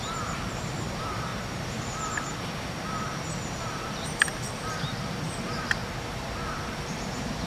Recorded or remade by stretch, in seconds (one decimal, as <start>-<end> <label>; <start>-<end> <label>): 0.0-1.3 remade; 1.3-3.6 recorded; 3.6-5.8 remade; 5.8-6.4 recorded; 6.4-7.5 remade